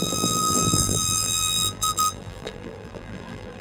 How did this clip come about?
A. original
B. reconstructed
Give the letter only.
B